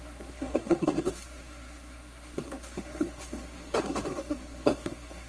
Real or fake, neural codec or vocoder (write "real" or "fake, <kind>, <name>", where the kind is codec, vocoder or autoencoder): fake, codec, SNAC